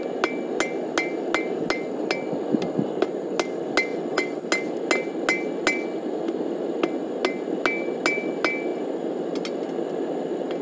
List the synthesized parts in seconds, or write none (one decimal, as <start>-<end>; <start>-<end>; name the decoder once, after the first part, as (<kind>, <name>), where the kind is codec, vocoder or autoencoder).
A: 3.9-4.4 (vocoder, WaveNeXt)